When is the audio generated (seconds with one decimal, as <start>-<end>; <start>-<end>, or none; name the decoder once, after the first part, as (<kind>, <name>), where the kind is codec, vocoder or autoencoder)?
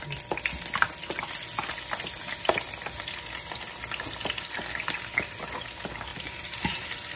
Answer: 6.1-7.2 (vocoder, BigVGAN v2)